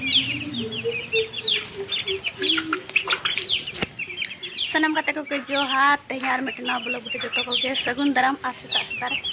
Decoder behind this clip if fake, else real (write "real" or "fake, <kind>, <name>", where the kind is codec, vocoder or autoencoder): real